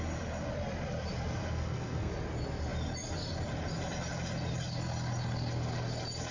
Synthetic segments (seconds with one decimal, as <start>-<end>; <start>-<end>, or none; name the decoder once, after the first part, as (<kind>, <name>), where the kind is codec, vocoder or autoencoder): 1.4-2.1 (codec, SNAC)